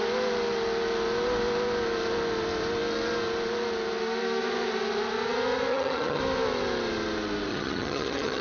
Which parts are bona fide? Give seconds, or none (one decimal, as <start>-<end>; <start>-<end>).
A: 0.0-5.7; 6.2-7.5